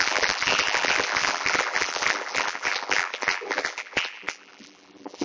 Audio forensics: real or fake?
fake